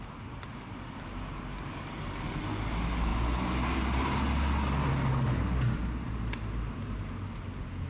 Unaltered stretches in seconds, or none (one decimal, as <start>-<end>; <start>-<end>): 0.0-7.9